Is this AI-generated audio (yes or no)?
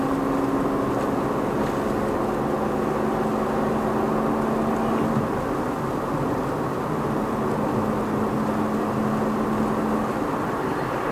no